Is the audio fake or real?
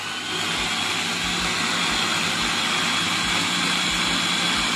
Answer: real